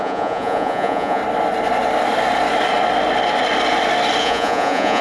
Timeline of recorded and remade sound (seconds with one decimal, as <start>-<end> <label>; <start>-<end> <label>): 0.0-1.2 remade; 1.2-4.2 recorded; 4.2-5.0 remade